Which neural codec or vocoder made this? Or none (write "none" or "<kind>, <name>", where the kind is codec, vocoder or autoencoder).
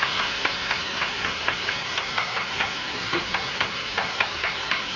codec, SNAC